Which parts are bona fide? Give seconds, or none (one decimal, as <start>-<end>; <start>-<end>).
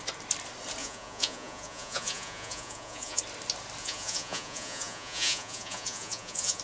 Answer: 0.0-0.8; 3.2-3.8